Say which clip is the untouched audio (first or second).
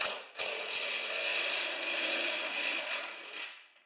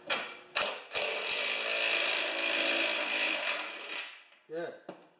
second